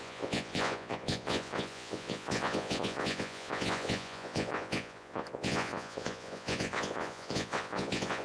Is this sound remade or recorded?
remade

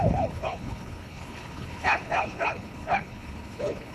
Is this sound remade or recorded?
remade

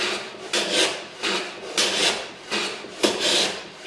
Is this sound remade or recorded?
recorded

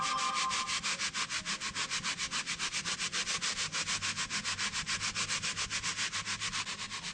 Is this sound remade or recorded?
recorded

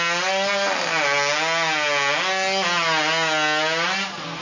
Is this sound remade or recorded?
recorded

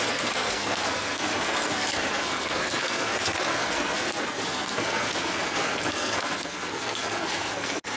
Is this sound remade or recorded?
remade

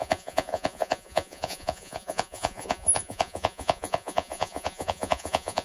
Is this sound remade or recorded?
remade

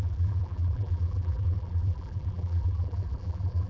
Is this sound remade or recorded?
remade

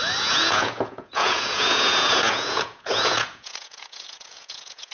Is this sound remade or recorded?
remade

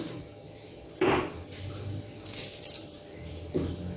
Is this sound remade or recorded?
recorded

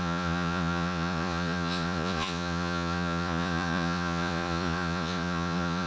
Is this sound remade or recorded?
remade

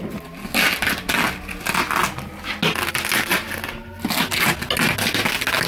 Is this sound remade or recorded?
recorded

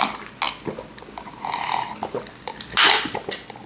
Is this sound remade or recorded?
recorded